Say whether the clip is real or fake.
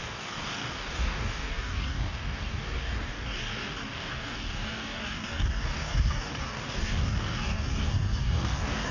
fake